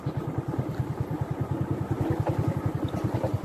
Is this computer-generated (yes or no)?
no